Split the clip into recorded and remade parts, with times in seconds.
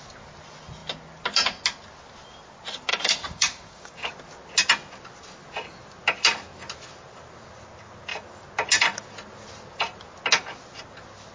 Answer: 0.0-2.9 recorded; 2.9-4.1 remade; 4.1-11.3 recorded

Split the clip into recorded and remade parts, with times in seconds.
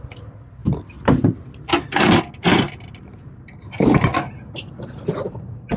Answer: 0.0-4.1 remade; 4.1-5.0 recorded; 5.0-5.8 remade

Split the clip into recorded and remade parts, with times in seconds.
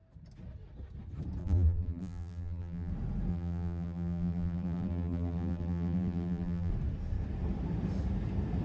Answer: 0.0-1.4 recorded; 1.4-2.9 remade; 2.9-3.3 recorded; 3.3-6.7 remade; 6.7-8.6 recorded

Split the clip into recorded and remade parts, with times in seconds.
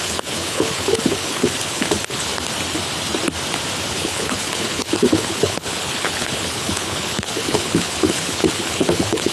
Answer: 0.0-2.3 remade; 2.3-3.9 recorded; 3.9-9.3 remade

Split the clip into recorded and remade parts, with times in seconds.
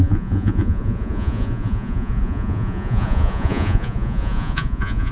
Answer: 0.0-5.1 remade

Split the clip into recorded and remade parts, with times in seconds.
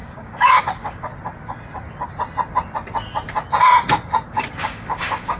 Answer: 0.0-1.1 remade; 1.1-4.3 recorded; 4.3-5.4 remade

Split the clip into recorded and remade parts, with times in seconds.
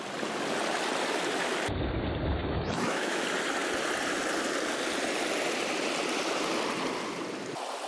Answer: 0.0-2.4 recorded; 2.4-3.2 remade; 3.2-7.9 recorded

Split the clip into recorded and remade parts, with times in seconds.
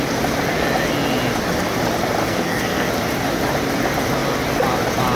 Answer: 0.0-2.2 recorded; 2.2-2.9 remade; 2.9-5.2 recorded